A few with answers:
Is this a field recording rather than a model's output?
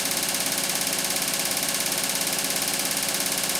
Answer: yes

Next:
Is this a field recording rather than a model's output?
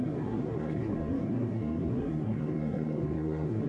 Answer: no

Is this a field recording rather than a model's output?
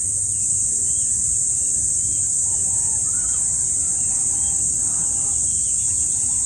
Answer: yes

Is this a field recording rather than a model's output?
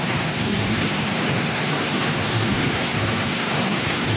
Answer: no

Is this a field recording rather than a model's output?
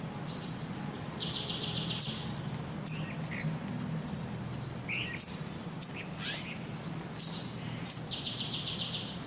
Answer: yes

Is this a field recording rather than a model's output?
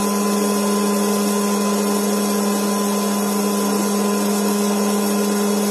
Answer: yes